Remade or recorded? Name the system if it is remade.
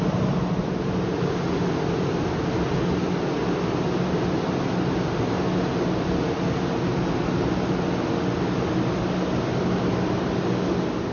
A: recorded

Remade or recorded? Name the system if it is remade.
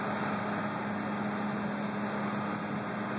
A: recorded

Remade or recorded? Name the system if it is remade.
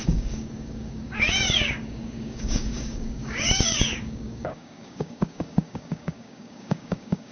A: remade, codec, DAC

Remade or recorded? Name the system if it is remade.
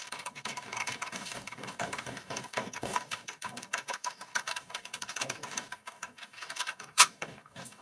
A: remade, codec, DAC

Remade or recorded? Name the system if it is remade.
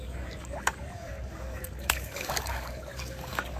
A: remade, codec, DAC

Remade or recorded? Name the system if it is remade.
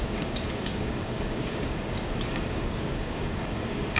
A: remade, codec, DAC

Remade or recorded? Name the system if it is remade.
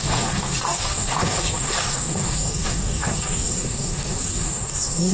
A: remade, codec, DAC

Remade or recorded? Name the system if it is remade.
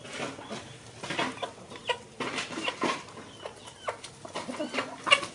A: recorded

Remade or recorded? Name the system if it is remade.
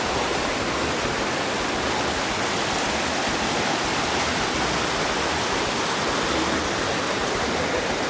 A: recorded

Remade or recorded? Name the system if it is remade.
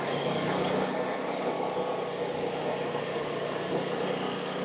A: remade, codec, DAC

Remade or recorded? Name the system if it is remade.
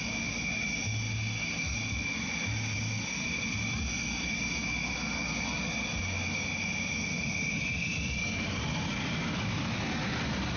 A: recorded